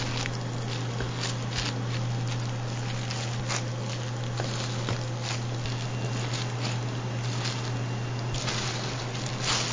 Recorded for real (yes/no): yes